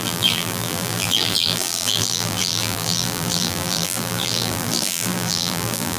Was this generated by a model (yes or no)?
yes